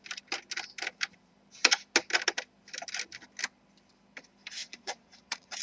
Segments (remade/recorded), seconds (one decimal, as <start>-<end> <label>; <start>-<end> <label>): 0.0-4.6 recorded; 4.6-5.6 remade